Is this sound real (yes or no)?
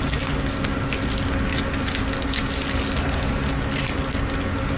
yes